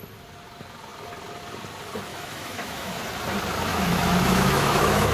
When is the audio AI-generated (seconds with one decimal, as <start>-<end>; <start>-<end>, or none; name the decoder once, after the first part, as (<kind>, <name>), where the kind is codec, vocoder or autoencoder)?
2.1-3.0 (autoencoder, DAC-VAE); 3.7-5.1